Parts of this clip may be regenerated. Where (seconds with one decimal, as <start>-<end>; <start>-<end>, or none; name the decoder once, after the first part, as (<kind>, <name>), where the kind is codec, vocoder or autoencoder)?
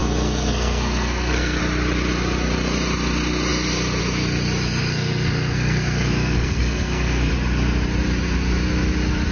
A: 0.0-1.6 (codec, SNAC); 4.8-7.3